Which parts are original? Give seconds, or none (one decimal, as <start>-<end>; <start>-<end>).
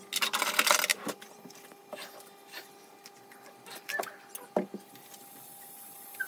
0.0-0.9; 1.4-6.3